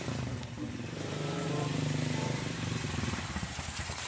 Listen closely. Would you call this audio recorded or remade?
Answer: remade